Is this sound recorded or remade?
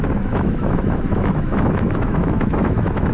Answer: remade